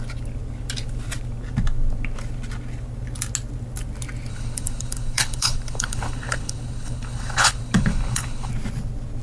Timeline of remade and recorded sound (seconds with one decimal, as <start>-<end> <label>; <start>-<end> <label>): 0.0-4.3 recorded; 4.3-8.5 remade; 8.5-9.2 recorded